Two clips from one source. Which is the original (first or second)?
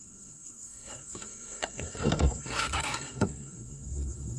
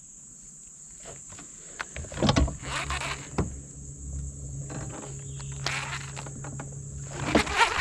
second